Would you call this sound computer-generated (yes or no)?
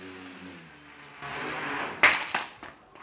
no